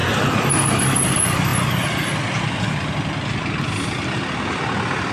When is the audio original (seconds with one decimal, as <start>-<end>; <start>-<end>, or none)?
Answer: 0.0-5.1